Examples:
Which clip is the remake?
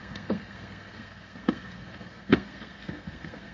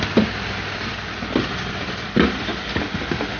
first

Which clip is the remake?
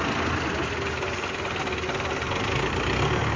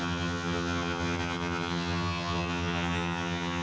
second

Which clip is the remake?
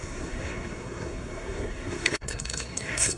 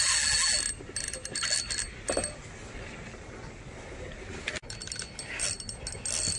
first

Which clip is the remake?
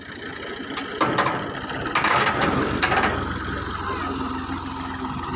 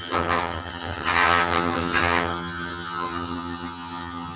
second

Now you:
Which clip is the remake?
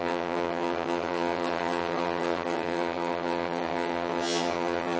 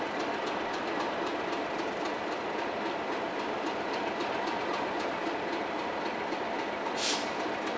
first